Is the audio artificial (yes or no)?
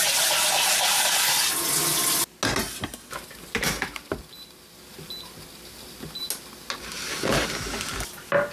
no